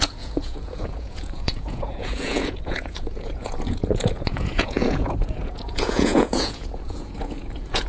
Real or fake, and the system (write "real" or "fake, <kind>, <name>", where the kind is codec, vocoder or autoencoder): fake, vocoder, Vocos